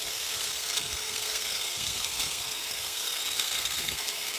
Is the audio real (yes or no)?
no